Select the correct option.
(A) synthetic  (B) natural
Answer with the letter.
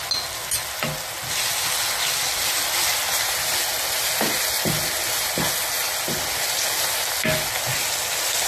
B